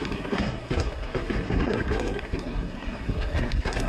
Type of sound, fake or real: fake